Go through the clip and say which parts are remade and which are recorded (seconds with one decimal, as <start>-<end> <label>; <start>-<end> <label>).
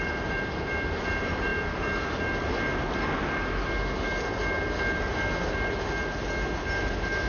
0.0-7.3 recorded